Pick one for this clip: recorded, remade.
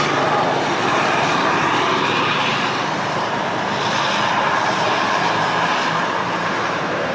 remade